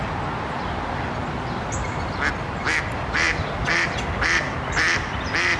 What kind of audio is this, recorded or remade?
recorded